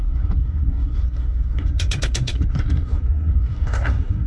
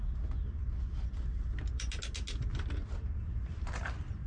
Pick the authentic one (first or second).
second